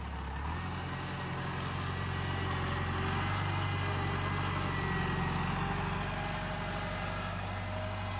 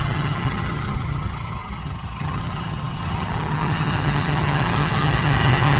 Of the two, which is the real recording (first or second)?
first